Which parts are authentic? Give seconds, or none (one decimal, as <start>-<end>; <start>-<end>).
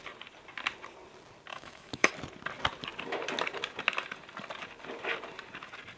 0.0-1.5; 2.1-6.0